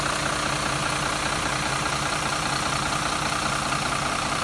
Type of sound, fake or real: real